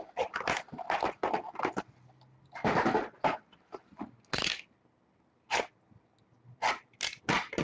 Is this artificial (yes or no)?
no